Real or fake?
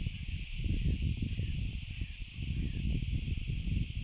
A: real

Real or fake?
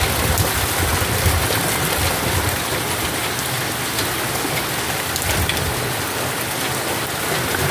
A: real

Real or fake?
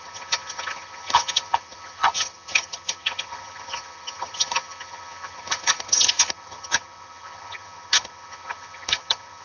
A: fake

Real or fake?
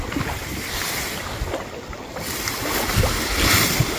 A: real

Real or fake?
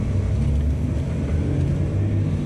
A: real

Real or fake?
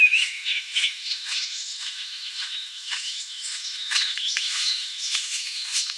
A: fake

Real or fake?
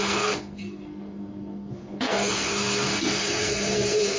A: fake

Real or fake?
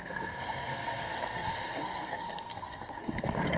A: fake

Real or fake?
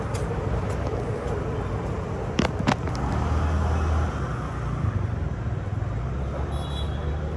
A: real